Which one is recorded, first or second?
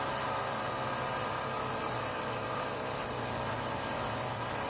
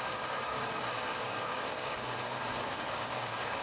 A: first